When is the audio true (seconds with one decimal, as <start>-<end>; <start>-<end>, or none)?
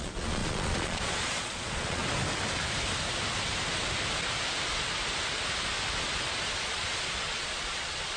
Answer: 2.0-6.5